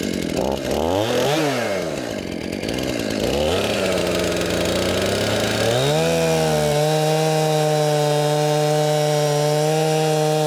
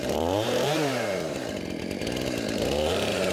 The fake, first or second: second